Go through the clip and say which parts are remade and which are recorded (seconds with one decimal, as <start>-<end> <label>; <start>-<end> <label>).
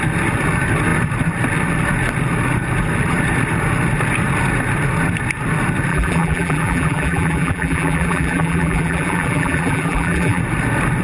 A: 0.0-5.9 recorded; 5.9-10.4 remade; 10.4-11.0 recorded